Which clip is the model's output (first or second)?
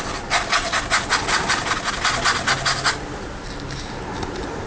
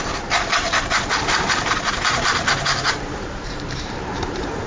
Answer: second